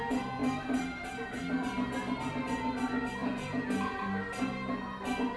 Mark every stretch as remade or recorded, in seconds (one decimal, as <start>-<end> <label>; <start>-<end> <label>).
0.0-5.4 recorded